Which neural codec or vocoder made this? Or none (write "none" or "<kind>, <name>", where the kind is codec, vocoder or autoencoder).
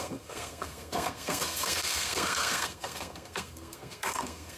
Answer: codec, SNAC